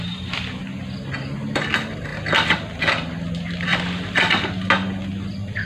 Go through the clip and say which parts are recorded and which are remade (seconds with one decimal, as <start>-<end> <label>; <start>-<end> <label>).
0.0-5.7 recorded